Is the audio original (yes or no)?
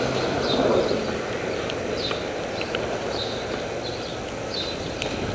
yes